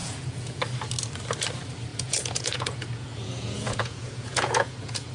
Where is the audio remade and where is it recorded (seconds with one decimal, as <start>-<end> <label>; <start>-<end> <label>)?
0.0-0.6 remade; 0.6-1.9 recorded; 1.9-5.1 remade

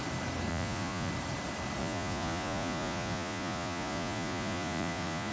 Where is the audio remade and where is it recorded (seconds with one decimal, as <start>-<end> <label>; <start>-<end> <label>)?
0.0-0.5 recorded; 0.5-1.1 remade; 1.1-1.8 recorded; 1.8-5.3 remade

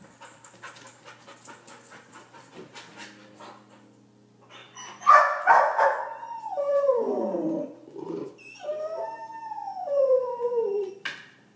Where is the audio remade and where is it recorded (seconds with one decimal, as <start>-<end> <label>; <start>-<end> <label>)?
0.0-4.6 recorded; 4.6-8.3 remade; 8.3-9.6 recorded; 9.6-10.9 remade; 10.9-11.6 recorded